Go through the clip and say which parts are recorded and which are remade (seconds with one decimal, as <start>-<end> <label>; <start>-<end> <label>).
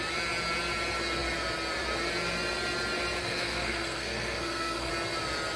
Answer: 0.0-3.2 recorded; 3.2-4.9 remade; 4.9-5.6 recorded